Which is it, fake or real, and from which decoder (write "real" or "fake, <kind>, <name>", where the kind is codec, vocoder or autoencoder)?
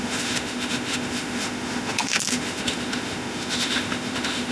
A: fake, autoencoder, DAC-VAE